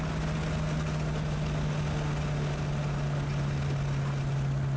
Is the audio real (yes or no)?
yes